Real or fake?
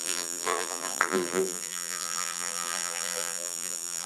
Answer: fake